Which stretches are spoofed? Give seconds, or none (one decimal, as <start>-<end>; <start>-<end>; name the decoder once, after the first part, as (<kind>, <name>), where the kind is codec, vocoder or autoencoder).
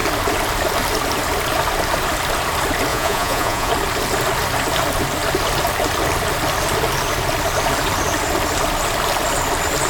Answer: 2.9-3.7 (vocoder, Vocos)